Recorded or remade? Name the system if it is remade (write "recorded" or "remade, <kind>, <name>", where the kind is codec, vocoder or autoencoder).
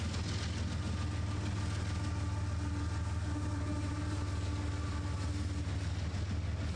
recorded